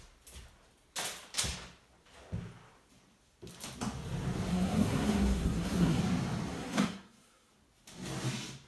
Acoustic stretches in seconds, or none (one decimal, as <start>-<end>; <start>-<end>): 0.0-4.5; 6.0-6.5; 7.5-8.7